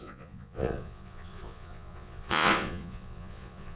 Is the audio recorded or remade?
remade